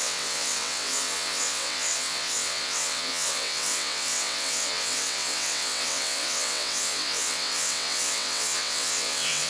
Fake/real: fake